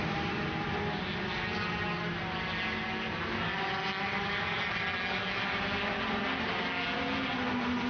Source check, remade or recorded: recorded